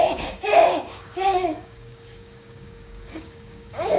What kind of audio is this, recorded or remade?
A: remade